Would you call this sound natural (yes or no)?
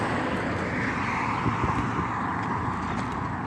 yes